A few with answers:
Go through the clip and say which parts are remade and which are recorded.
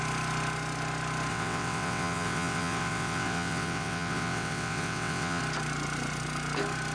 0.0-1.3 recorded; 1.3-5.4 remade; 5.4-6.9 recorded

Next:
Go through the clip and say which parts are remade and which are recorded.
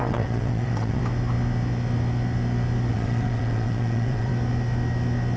0.0-1.0 remade; 1.0-2.9 recorded; 2.9-4.3 remade; 4.3-5.4 recorded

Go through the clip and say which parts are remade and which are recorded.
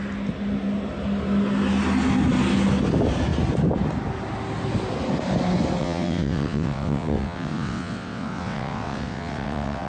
0.0-5.8 recorded; 5.8-9.9 remade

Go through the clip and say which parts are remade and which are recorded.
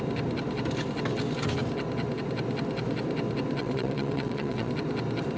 0.0-3.6 recorded; 3.6-4.7 remade; 4.7-5.4 recorded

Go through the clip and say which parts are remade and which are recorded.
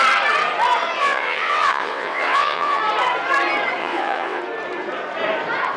0.0-1.0 recorded; 1.0-2.8 remade; 2.8-3.8 recorded; 3.8-4.4 remade; 4.4-5.8 recorded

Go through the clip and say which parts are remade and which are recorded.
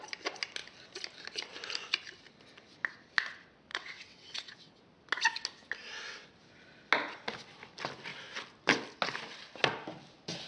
0.0-3.7 recorded; 3.7-4.8 remade; 4.8-10.5 recorded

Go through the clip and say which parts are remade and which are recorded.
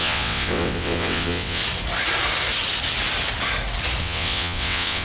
0.0-1.6 remade; 1.6-4.0 recorded; 4.0-5.0 remade